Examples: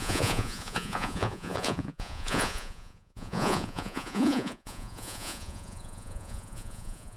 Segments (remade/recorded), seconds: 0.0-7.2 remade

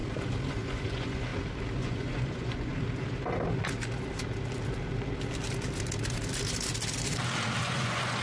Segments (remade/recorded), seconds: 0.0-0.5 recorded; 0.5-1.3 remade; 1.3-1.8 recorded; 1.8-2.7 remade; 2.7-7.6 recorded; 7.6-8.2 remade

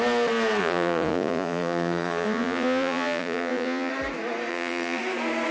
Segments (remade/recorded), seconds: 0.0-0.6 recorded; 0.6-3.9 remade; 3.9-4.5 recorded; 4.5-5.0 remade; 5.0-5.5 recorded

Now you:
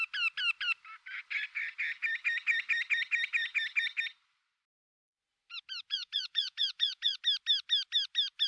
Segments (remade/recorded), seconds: 0.0-5.9 recorded; 5.9-7.2 remade; 7.2-8.5 recorded

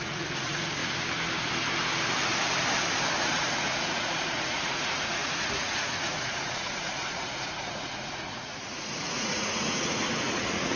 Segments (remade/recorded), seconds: 0.0-0.8 remade; 0.8-3.3 recorded; 3.3-10.8 remade

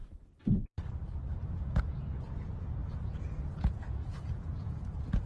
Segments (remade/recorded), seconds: 0.0-1.3 recorded; 1.3-5.3 remade

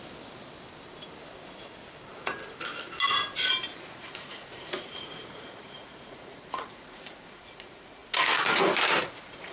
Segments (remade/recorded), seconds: 0.0-3.8 recorded; 3.8-8.0 remade; 8.0-9.0 recorded; 9.0-9.5 remade

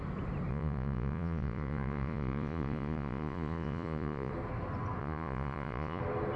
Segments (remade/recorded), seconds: 0.0-0.5 recorded; 0.5-4.3 remade; 4.3-5.0 recorded; 5.0-6.0 remade; 6.0-6.4 recorded